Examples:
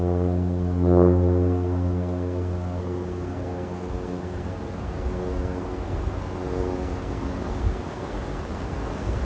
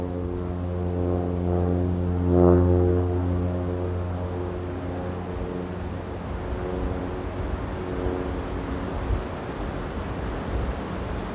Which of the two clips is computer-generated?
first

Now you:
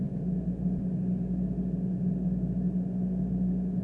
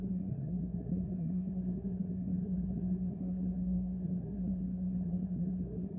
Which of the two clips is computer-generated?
second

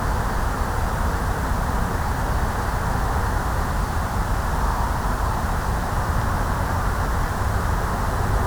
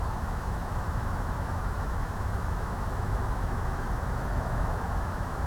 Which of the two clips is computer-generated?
second